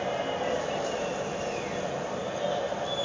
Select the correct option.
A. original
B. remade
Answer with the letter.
A